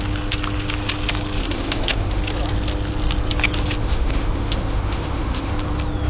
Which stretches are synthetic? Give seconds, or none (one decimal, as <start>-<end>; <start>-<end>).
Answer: 1.4-2.2; 3.8-5.5

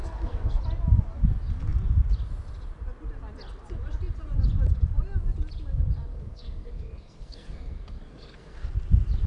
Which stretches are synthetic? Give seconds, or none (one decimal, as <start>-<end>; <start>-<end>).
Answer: 0.0-0.6; 6.1-8.7

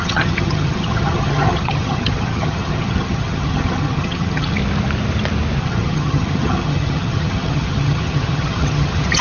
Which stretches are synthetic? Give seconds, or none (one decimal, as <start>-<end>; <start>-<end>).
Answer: 0.0-4.6; 5.6-9.2

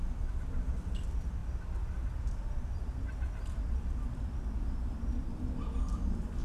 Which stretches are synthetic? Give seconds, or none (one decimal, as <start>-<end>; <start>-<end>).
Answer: none

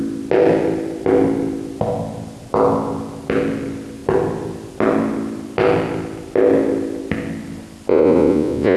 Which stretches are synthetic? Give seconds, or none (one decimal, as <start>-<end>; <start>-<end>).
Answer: 7.9-8.8